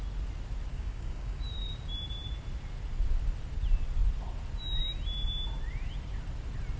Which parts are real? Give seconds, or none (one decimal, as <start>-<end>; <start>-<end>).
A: 0.0-0.7; 1.4-6.8